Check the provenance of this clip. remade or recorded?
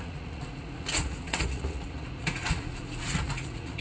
remade